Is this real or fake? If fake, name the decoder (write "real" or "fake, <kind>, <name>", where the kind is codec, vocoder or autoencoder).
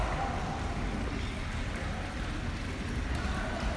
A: real